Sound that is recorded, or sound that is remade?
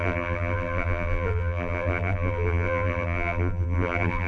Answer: remade